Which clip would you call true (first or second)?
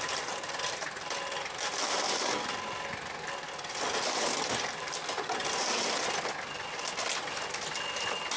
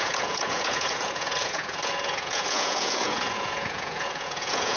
first